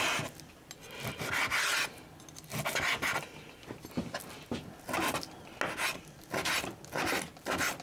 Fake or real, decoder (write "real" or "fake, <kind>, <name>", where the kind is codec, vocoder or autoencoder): real